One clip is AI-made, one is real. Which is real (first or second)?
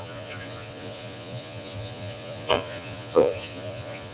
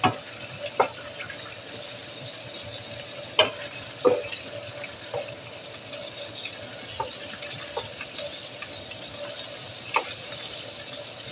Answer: second